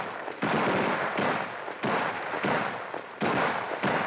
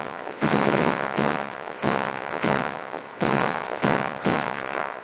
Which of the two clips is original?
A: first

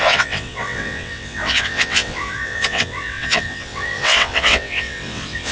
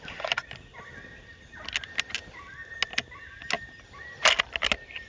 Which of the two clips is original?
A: second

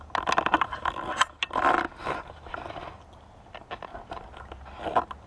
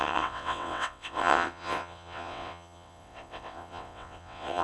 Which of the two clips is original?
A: first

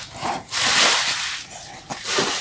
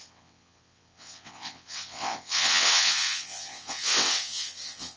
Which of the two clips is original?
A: first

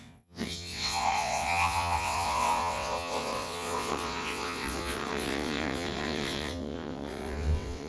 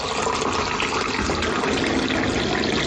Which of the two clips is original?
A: second